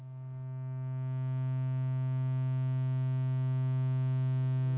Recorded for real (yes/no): yes